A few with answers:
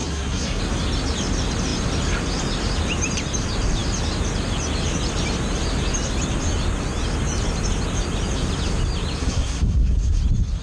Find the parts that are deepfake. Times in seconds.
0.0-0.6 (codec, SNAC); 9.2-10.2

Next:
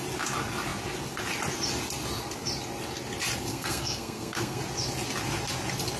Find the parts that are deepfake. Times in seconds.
3.5-4.6 (codec, SNAC)

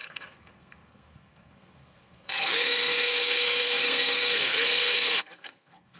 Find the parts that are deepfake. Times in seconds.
0.0-6.0 (codec, SNAC)

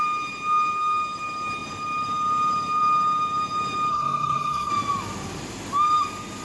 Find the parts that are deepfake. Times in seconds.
3.9-4.7 (codec, SNAC)